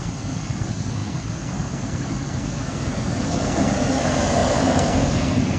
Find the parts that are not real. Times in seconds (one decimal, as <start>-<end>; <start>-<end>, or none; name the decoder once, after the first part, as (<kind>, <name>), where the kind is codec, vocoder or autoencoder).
0.0-5.6 (codec, SNAC)